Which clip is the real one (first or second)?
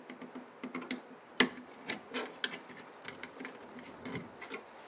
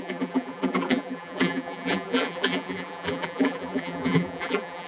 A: first